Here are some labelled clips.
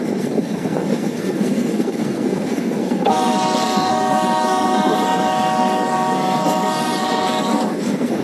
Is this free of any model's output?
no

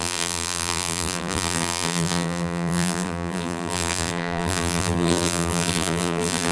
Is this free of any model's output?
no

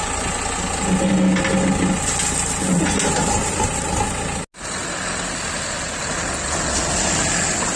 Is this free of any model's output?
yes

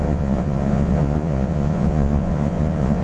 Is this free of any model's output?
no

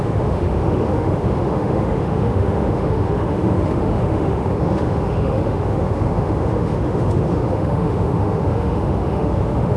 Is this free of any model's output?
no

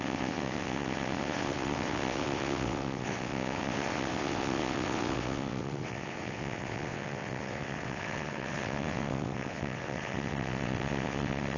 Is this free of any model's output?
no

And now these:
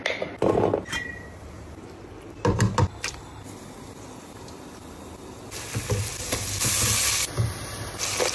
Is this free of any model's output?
yes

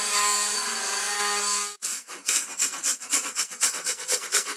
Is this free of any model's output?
no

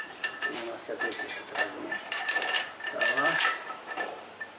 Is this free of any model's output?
no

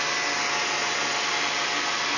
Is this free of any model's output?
yes